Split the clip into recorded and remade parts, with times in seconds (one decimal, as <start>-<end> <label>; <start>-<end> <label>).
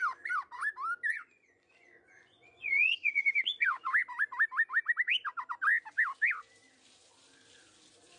0.0-1.1 recorded; 1.1-3.9 remade; 3.9-8.2 recorded